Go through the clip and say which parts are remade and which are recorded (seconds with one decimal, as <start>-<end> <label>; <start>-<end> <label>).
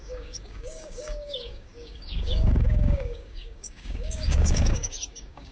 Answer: 0.0-5.5 remade